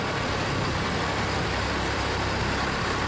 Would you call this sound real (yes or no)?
yes